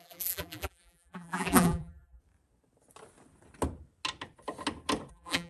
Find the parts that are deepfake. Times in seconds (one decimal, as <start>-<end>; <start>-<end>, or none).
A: 0.0-2.2; 5.1-5.5